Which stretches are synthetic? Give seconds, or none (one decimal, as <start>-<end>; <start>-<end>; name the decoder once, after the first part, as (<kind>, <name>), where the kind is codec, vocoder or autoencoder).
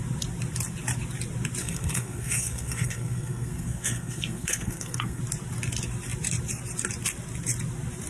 1.6-5.2 (codec, SNAC)